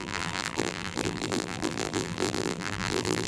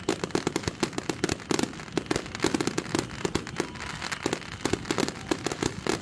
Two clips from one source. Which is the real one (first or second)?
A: second